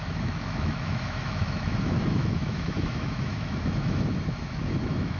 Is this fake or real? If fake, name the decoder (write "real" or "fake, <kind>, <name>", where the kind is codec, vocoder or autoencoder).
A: fake, autoencoder, DAC-VAE